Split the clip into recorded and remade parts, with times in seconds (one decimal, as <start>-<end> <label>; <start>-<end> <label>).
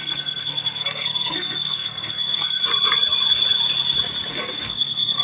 0.0-2.6 remade; 2.6-4.3 recorded; 4.3-5.2 remade